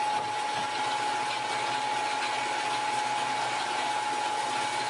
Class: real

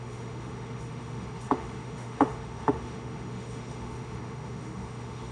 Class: fake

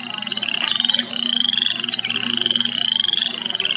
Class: real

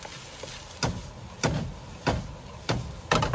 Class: real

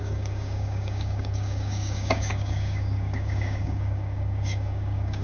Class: fake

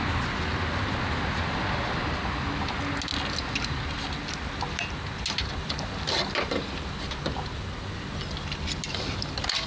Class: real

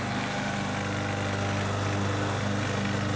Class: real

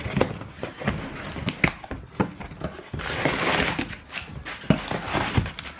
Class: real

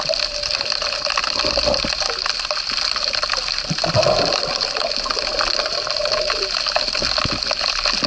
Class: real